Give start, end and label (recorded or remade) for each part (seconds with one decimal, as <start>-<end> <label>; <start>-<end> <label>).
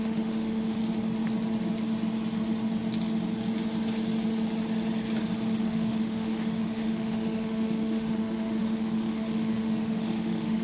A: 0.0-0.8 remade; 0.8-5.6 recorded; 5.6-10.6 remade